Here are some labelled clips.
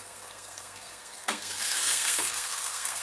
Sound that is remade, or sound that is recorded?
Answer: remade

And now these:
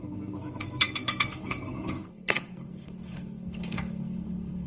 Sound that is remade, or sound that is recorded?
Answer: remade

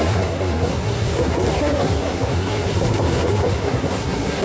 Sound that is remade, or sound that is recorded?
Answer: remade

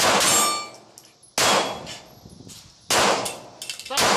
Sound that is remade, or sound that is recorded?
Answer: recorded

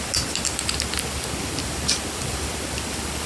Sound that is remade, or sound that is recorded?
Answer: recorded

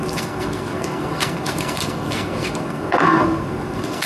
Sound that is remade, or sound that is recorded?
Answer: remade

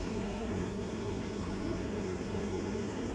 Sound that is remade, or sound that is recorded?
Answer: remade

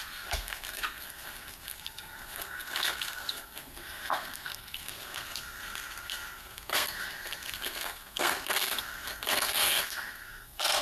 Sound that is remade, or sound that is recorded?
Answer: remade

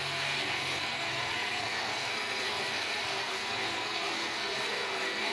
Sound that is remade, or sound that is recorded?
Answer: remade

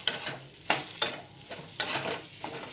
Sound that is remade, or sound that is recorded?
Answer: recorded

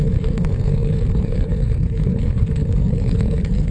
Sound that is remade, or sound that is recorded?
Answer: remade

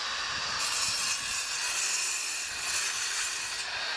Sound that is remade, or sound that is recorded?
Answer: recorded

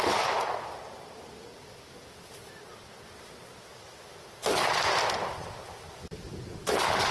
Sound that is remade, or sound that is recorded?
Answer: recorded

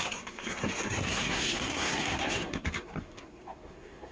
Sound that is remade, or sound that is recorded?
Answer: remade